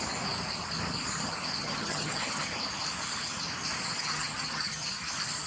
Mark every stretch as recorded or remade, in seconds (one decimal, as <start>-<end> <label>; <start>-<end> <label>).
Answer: 0.0-1.6 recorded; 1.6-2.5 remade; 2.5-4.0 recorded; 4.0-5.0 remade; 5.0-5.5 recorded